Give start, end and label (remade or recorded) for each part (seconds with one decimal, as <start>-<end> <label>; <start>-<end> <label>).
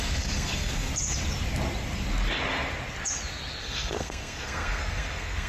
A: 0.0-0.9 remade; 0.9-3.6 recorded; 3.6-5.5 remade